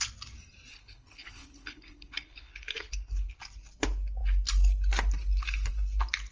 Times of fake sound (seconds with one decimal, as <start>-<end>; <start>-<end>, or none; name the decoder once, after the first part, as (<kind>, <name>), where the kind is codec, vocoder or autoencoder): 0.7-3.4 (codec, HILCodec)